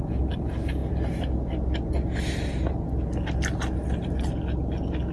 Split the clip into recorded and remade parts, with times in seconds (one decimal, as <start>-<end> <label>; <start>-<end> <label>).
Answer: 0.0-5.1 recorded